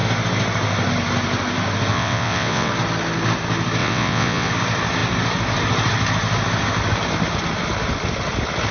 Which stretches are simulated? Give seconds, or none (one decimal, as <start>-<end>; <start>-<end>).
1.9-2.7; 3.8-4.5